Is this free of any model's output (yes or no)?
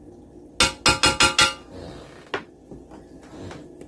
yes